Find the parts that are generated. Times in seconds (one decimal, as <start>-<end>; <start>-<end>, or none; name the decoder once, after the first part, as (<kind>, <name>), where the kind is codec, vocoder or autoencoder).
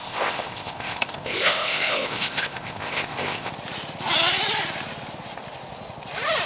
0.0-3.5 (codec, ZipCodec)